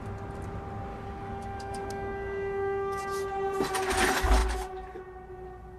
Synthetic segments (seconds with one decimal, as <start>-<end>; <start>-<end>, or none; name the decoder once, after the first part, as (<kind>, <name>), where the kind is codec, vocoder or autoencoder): 0.9-3.0 (codec, DAC)